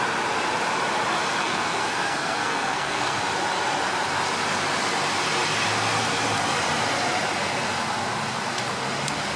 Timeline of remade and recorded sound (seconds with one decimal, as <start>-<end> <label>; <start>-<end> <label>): 0.0-1.4 recorded; 1.4-3.2 remade; 3.2-9.4 recorded